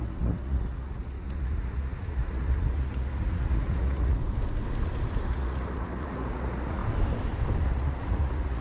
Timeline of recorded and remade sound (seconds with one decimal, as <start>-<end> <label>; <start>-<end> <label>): 0.0-4.2 remade; 4.2-5.3 recorded; 5.3-6.8 remade; 6.8-7.7 recorded; 7.7-8.6 remade